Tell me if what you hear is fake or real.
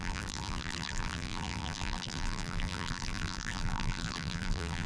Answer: fake